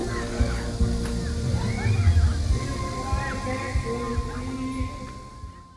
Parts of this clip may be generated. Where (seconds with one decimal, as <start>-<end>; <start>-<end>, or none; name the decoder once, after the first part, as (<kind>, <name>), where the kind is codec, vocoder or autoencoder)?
0.0-0.7 (codec, DAC)